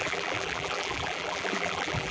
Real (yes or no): no